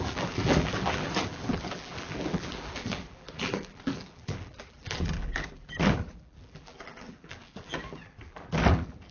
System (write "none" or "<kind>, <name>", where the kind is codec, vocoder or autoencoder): vocoder, BigVGAN v2